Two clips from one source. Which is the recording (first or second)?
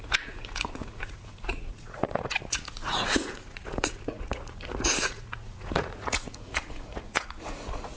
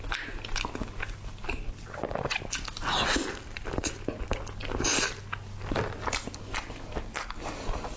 second